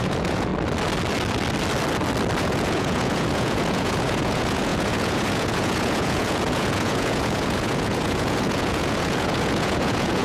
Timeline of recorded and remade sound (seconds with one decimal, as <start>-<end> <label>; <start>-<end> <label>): 0.0-0.5 remade; 0.5-2.4 recorded; 2.4-10.2 remade